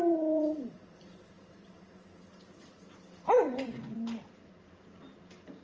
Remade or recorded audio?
remade